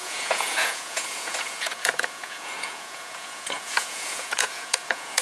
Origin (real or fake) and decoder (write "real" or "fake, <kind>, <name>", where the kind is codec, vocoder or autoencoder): fake, vocoder, Vocos